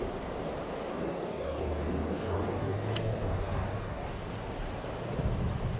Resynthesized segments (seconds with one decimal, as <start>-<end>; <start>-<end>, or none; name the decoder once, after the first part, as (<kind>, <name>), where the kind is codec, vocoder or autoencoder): 0.9-4.2 (codec, DAC)